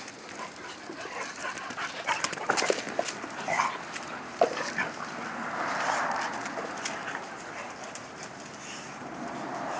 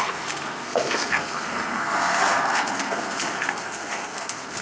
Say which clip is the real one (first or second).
first